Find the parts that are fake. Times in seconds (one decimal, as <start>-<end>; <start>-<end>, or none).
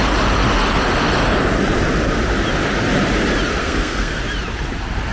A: 3.6-4.2